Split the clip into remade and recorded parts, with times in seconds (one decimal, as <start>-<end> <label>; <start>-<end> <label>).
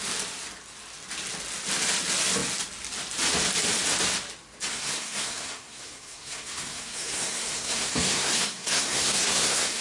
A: 0.0-4.7 recorded; 4.7-9.8 remade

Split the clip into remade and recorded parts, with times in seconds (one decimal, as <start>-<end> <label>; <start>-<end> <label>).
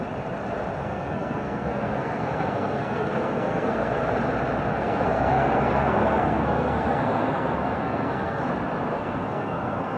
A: 0.0-0.8 recorded; 0.8-4.0 remade; 4.0-4.7 recorded; 4.7-8.5 remade; 8.5-8.9 recorded; 8.9-10.0 remade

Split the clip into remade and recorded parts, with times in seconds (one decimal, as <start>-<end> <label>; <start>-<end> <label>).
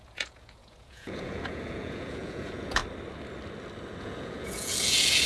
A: 0.0-2.8 remade; 2.8-4.0 recorded; 4.0-5.3 remade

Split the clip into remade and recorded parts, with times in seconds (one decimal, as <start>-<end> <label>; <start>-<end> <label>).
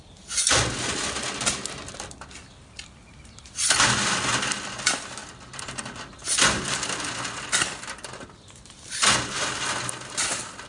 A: 0.0-10.7 recorded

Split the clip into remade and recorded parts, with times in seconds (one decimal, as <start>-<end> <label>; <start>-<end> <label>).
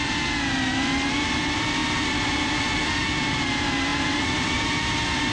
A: 0.0-5.3 recorded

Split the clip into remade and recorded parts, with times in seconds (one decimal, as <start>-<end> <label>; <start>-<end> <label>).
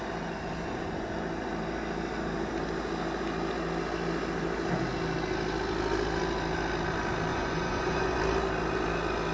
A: 0.0-7.3 recorded; 7.3-8.2 remade; 8.2-9.3 recorded